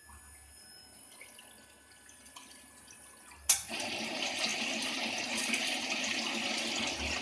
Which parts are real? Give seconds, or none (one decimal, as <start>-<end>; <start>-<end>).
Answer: 0.0-7.2